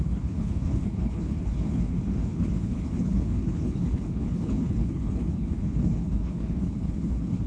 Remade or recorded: remade